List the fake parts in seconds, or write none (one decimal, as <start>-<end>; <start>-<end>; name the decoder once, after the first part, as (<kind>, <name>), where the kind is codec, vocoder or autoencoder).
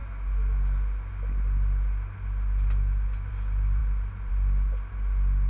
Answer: none